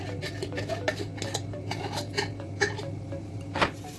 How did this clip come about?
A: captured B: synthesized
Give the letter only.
A